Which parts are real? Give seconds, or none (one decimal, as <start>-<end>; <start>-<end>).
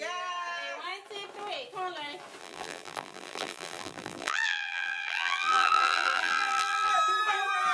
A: 0.0-2.4; 6.9-7.7